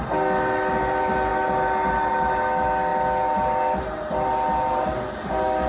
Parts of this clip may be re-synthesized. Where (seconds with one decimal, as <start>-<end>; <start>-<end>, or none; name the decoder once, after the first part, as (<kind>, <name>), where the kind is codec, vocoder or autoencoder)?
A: none